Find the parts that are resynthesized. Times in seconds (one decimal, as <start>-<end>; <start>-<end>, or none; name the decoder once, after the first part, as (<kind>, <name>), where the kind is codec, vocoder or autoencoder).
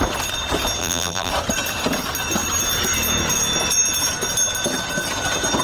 0.8-1.3 (vocoder, BigVGAN v2)